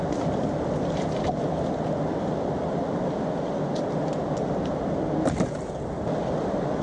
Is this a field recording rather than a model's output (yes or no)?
yes